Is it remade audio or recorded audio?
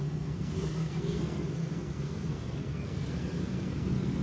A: remade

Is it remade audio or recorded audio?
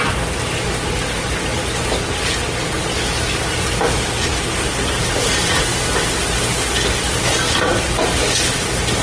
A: recorded